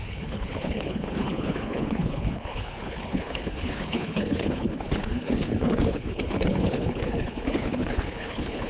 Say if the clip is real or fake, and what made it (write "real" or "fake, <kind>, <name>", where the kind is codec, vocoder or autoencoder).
fake, codec, HILCodec